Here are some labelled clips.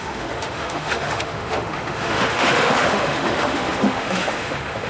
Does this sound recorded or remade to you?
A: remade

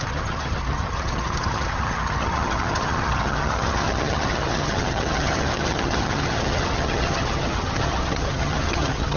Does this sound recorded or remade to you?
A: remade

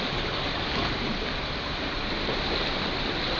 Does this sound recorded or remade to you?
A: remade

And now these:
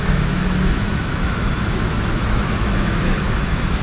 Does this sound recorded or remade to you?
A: remade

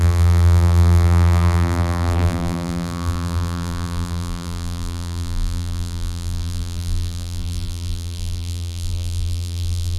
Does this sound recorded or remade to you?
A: remade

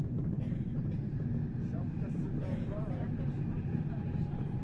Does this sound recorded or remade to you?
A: remade